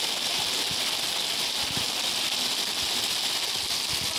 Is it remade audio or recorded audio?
recorded